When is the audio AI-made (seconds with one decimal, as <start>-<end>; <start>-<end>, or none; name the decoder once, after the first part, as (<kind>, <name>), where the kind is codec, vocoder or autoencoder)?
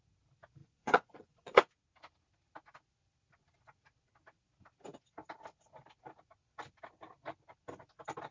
0.6-1.7 (vocoder, Vocos)